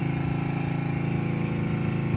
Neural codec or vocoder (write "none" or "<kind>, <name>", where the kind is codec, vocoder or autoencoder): none